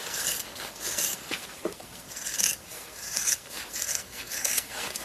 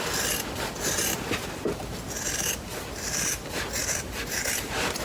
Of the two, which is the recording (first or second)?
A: second